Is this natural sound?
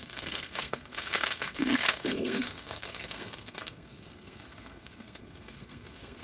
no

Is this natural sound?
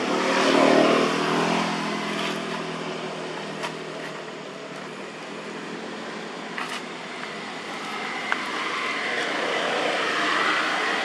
yes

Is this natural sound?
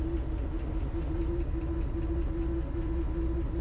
yes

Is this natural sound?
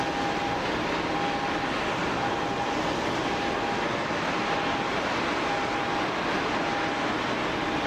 yes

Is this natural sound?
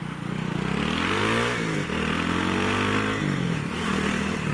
yes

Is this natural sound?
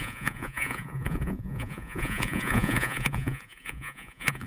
no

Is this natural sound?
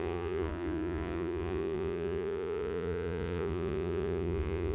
no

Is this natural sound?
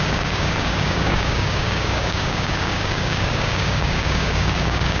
no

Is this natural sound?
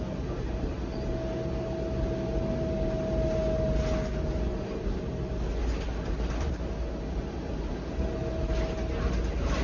yes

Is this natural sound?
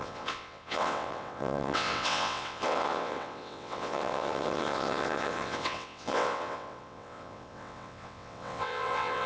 no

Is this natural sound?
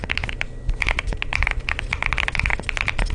yes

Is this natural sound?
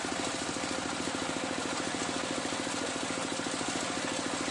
yes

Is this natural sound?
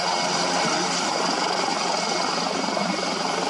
yes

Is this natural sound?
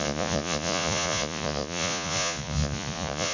no